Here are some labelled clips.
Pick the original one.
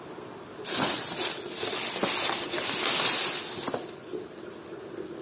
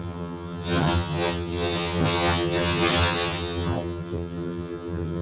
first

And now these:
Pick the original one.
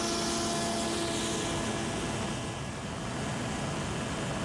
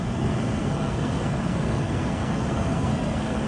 first